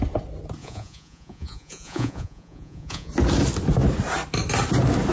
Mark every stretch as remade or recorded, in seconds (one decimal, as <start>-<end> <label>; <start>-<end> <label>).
0.0-0.6 recorded; 0.6-3.1 remade; 3.1-5.1 recorded